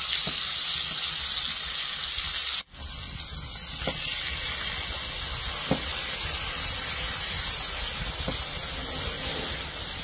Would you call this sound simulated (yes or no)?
no